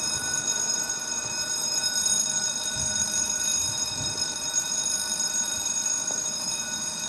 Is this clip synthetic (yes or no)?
yes